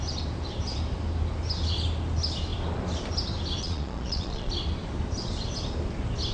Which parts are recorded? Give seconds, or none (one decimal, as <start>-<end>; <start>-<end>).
0.0-3.6; 4.5-6.3